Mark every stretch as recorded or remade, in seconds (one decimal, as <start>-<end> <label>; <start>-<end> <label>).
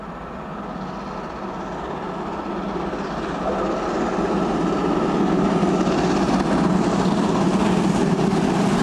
0.0-8.8 recorded